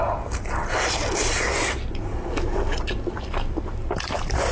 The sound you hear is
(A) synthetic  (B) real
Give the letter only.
B